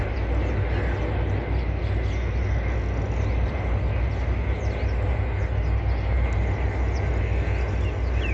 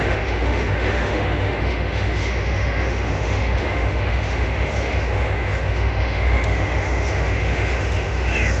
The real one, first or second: first